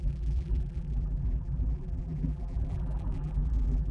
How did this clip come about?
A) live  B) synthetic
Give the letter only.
B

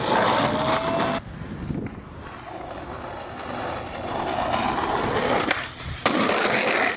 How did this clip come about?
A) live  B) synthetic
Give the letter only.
A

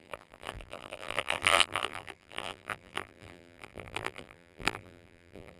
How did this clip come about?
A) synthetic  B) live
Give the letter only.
A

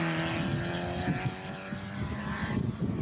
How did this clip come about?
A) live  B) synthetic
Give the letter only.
A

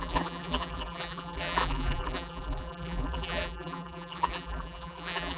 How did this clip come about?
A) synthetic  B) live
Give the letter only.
A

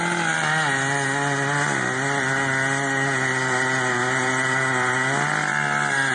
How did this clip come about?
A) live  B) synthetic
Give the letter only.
A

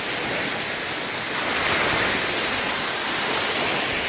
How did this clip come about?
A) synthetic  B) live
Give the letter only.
B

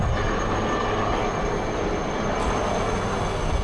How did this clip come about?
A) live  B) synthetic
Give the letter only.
A